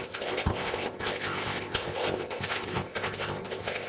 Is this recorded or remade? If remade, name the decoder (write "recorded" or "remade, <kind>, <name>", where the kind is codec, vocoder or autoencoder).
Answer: remade, codec, ZipCodec